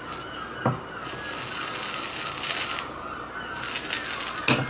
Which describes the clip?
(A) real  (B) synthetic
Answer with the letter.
A